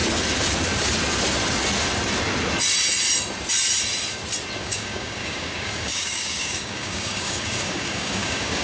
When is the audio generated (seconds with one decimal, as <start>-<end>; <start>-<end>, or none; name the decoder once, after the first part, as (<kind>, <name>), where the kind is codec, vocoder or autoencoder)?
4.6-8.6 (codec, DAC)